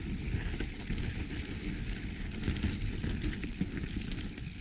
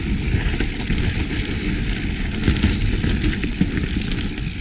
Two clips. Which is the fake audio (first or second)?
first